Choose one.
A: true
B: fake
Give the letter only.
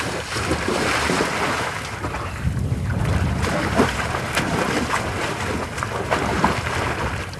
A